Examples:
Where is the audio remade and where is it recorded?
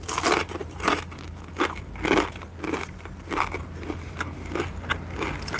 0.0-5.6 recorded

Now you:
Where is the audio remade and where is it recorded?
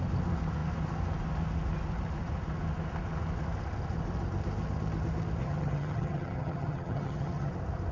0.0-5.4 recorded; 5.4-7.5 remade; 7.5-7.9 recorded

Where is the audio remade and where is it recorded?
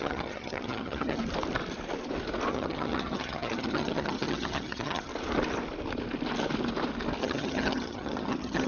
0.0-1.2 remade; 1.2-2.5 recorded; 2.5-5.1 remade; 5.1-7.2 recorded; 7.2-8.7 remade